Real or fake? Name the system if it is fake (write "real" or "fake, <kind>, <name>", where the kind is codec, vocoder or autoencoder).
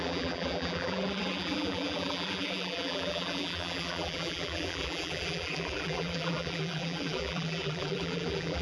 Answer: fake, vocoder, BigVGAN v2